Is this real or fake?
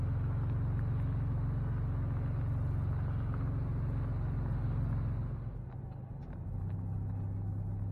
real